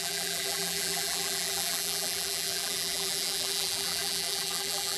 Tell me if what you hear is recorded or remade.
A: remade